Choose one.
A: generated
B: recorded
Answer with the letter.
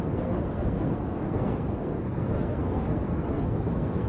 A